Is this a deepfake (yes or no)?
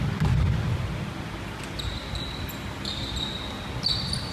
no